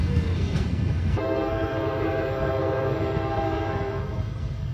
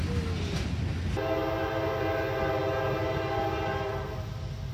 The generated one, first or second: first